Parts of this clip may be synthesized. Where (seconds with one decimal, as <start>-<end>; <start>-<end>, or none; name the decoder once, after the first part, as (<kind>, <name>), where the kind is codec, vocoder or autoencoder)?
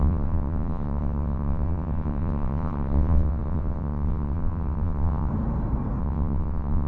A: 0.0-5.3 (vocoder, WaveNeXt); 6.0-6.9